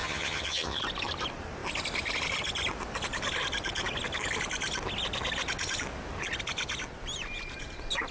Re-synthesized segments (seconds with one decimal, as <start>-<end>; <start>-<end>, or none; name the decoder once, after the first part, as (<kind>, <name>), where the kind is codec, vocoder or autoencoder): 0.0-0.8 (vocoder, HiFi-GAN)